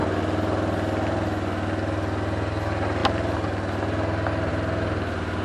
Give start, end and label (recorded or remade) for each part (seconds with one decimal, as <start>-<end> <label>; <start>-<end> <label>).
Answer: 0.0-5.4 recorded